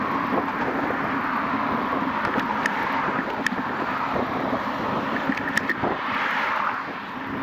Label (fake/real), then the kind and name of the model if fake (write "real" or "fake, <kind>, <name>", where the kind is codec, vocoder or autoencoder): real